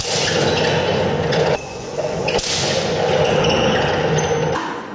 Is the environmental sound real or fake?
fake